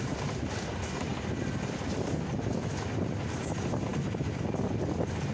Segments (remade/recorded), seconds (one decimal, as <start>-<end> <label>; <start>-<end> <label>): 0.0-5.3 recorded